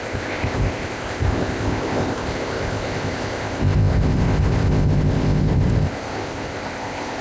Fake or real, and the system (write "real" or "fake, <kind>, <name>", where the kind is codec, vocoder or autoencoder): fake, codec, ZipCodec